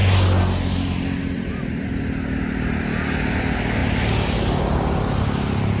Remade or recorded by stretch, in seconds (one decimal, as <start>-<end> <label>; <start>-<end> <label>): 0.0-5.8 recorded

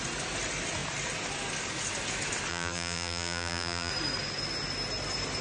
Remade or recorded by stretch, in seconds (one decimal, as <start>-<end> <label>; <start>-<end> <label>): 0.0-2.5 recorded; 2.5-3.9 remade; 3.9-5.4 recorded